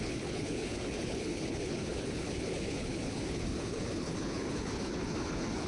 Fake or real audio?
fake